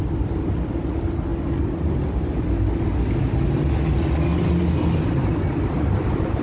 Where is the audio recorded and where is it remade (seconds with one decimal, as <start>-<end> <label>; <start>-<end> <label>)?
0.0-6.4 recorded